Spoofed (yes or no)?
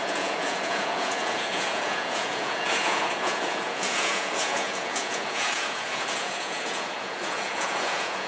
yes